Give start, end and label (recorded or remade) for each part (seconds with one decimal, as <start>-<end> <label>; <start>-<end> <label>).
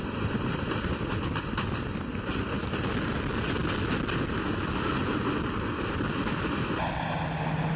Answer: 0.0-2.1 recorded; 2.1-2.7 remade; 2.7-7.8 recorded